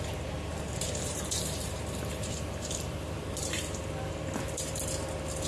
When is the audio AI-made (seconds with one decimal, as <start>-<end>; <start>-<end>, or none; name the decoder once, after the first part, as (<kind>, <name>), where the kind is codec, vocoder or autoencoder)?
0.5-3.8 (vocoder, BigVGAN v2)